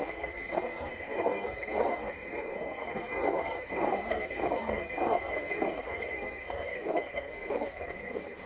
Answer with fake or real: fake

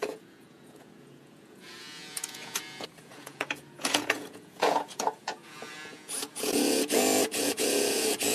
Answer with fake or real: fake